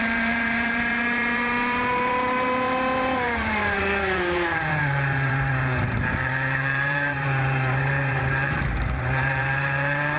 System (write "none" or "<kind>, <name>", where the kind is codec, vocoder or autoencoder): vocoder, BigVGAN v2